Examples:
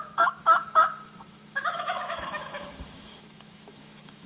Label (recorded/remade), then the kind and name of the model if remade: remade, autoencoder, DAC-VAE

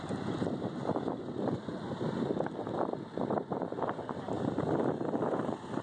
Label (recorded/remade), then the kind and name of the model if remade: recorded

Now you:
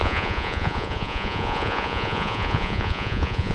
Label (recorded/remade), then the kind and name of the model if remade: remade, vocoder, Vocos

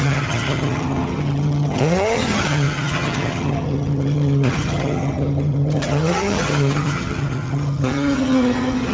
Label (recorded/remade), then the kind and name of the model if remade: remade, vocoder, HiFi-GAN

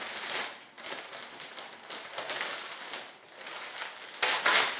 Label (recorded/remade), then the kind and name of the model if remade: recorded